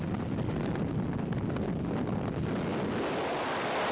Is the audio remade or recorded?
recorded